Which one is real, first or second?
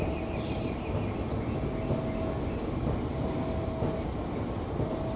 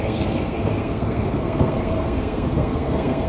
first